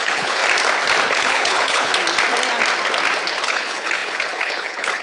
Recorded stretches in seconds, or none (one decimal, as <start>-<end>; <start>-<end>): 0.4-1.1; 1.9-3.4